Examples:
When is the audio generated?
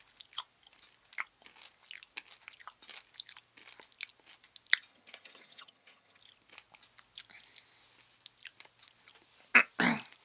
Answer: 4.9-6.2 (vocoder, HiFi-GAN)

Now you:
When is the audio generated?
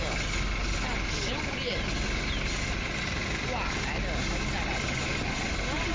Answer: none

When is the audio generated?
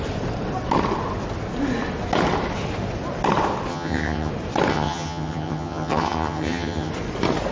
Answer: 3.7-4.3 (vocoder, HiFi-GAN); 4.7-6.9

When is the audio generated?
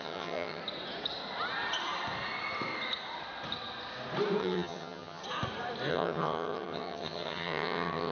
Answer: 0.0-0.6 (vocoder, HiFi-GAN); 4.4-5.2; 5.9-8.1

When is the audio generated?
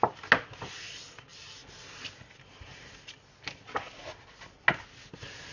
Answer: none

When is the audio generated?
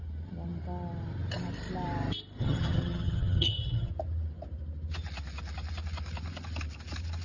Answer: 2.4-3.9 (vocoder, HiFi-GAN)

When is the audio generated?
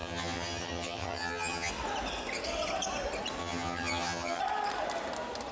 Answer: 0.0-1.7 (vocoder, HiFi-GAN); 3.4-4.4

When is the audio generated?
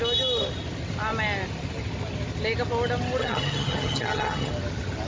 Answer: 3.2-4.5 (vocoder, HiFi-GAN)